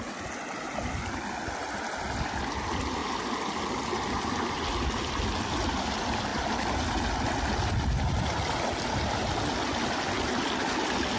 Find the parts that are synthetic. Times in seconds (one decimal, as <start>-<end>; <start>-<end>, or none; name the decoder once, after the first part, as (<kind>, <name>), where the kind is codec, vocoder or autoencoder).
none